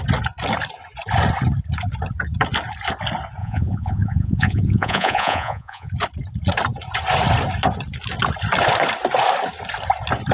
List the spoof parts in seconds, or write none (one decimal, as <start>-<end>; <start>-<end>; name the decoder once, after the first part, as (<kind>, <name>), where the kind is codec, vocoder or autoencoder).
3.4-5.9 (vocoder, Vocos)